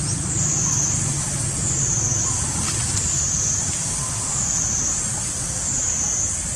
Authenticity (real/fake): real